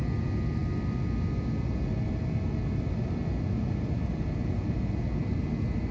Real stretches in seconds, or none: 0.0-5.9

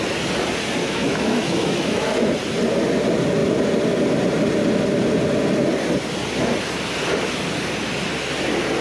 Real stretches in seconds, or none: 0.0-0.8; 2.1-8.8

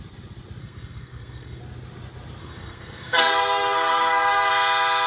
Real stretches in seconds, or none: 0.0-0.6; 1.6-2.4; 4.5-5.1